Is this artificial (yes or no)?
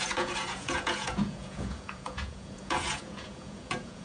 yes